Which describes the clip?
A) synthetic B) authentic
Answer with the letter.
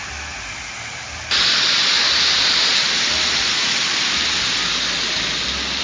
B